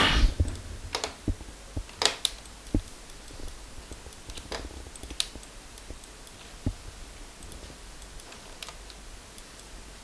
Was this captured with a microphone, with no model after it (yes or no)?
yes